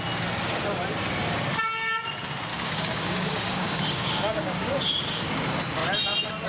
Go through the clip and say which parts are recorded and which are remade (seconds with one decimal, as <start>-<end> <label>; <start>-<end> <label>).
0.0-2.5 recorded; 2.5-5.3 remade; 5.3-6.5 recorded